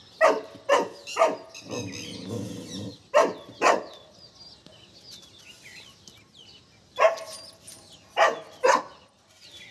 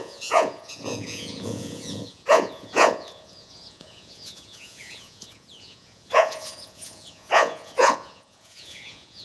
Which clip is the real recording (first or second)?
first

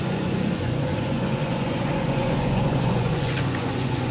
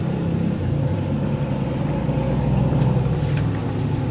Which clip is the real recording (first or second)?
second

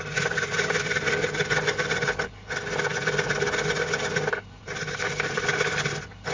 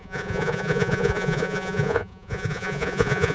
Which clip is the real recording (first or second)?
first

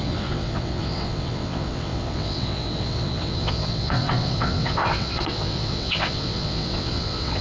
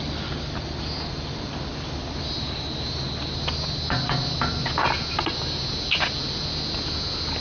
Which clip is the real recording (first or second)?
second